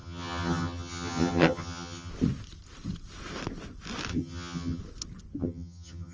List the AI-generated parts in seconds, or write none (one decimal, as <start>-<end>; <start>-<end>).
0.0-2.1; 4.1-4.8; 5.4-6.1